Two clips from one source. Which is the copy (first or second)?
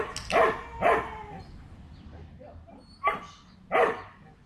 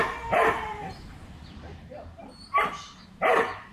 second